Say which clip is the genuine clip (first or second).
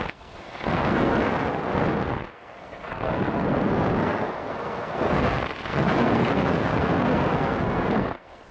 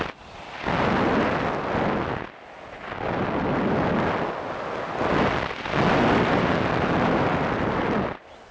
second